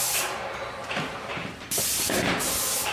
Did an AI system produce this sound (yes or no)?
yes